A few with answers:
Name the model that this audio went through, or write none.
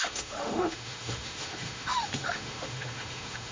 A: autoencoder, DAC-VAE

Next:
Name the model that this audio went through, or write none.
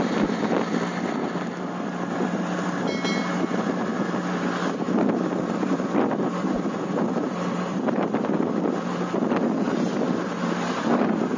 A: none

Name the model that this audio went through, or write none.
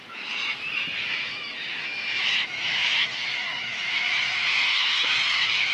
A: autoencoder, DAC-VAE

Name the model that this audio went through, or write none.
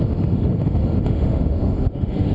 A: autoencoder, DAC-VAE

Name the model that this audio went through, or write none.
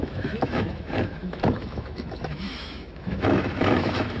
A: autoencoder, DAC-VAE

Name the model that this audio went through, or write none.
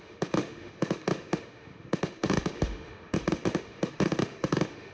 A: autoencoder, DAC-VAE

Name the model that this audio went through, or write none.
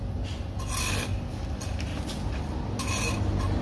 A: none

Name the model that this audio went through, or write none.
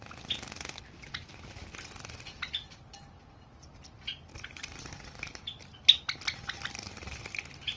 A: none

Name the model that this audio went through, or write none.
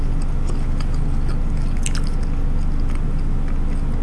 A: none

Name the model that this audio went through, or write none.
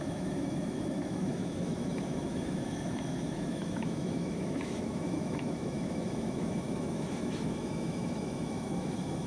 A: autoencoder, DAC-VAE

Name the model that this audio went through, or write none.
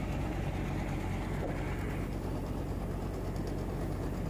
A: none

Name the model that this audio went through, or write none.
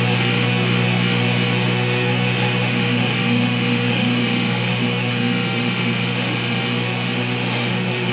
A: autoencoder, DAC-VAE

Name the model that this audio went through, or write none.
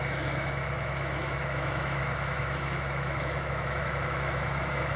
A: autoencoder, DAC-VAE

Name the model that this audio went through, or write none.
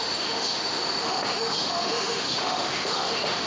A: autoencoder, DAC-VAE